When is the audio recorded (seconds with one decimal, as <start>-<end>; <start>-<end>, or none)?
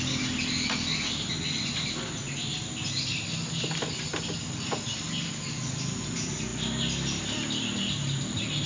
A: 0.0-8.7